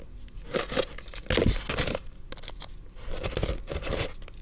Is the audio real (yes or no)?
yes